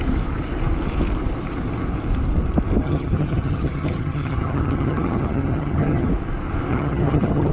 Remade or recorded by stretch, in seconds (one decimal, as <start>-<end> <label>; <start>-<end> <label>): 0.0-2.8 recorded; 2.8-6.1 remade; 6.1-6.7 recorded; 6.7-7.5 remade